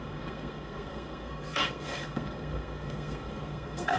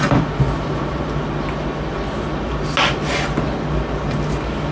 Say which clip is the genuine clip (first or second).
second